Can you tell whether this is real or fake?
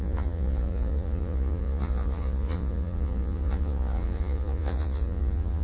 fake